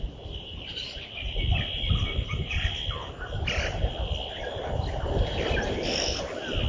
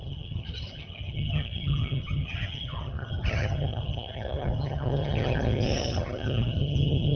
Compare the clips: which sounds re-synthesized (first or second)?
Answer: second